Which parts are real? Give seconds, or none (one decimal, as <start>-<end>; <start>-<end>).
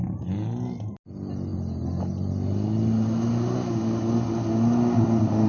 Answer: 0.0-5.5